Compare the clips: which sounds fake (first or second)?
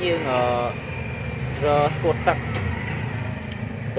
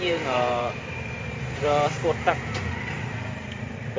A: second